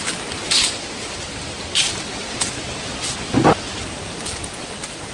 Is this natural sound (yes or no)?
yes